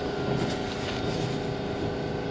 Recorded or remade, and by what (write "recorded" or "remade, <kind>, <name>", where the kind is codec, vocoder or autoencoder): recorded